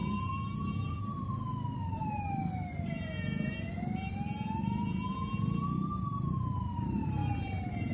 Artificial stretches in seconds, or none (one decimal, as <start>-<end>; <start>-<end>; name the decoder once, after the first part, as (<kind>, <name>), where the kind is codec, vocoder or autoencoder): 0.0-1.5 (vocoder, BigVGAN v2); 6.0-7.2